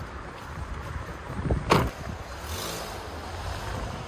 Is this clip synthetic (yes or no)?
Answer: no